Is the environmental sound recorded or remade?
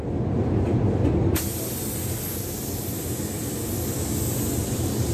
recorded